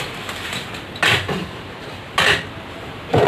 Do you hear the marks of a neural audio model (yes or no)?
no